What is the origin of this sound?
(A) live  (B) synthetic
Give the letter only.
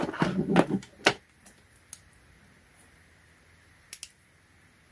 A